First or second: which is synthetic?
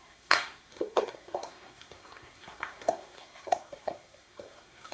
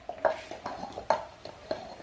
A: first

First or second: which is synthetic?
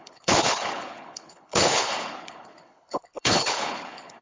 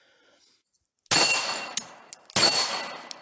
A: first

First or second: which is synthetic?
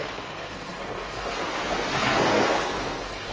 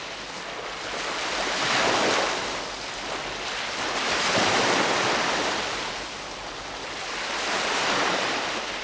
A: first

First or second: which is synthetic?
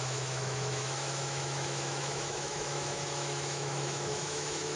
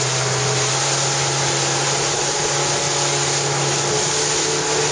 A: first